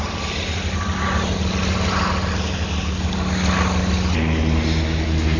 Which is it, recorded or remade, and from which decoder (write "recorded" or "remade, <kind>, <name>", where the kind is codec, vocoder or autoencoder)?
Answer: recorded